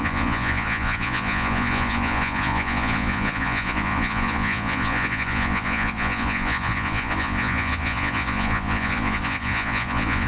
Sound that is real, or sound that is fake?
fake